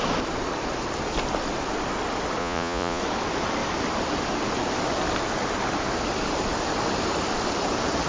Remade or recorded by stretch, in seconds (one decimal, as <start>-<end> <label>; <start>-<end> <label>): 0.0-2.4 recorded; 2.4-3.0 remade; 3.0-8.1 recorded